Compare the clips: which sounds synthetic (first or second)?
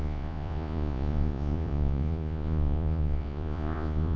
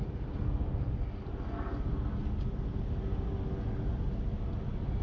first